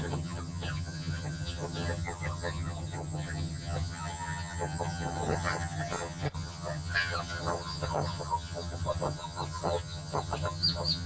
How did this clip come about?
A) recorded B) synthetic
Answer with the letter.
B